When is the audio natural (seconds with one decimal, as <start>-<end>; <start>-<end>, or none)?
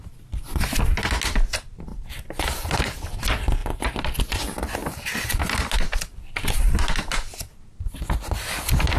0.0-1.9; 2.8-3.6; 4.2-4.8; 6.9-9.0